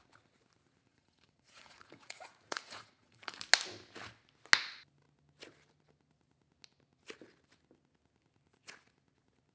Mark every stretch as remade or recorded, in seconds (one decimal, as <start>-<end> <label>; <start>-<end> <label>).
0.0-0.9 recorded; 0.9-3.4 remade; 3.4-9.5 recorded